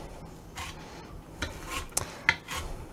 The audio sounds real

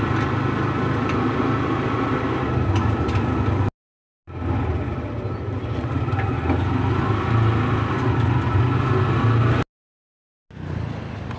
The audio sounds real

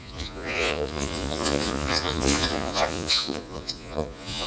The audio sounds fake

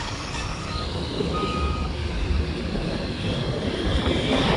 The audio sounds fake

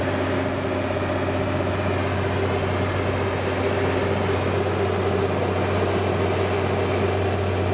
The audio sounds real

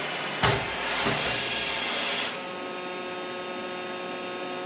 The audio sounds real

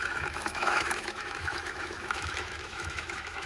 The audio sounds fake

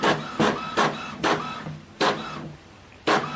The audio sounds fake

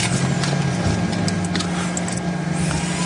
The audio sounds real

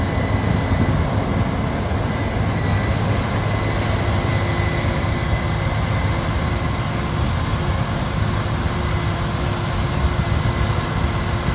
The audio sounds real